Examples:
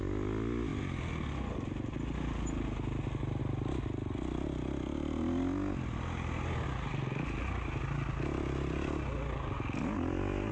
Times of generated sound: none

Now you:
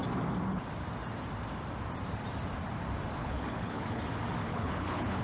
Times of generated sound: 3.2-4.0 (codec, HILCodec); 4.5-5.2

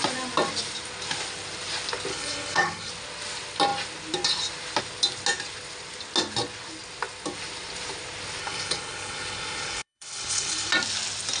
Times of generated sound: 2.1-2.9 (codec, HILCodec); 8.4-10.7

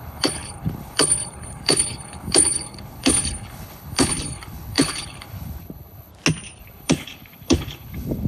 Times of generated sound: 0.0-6.1 (codec, HILCodec); 6.6-8.3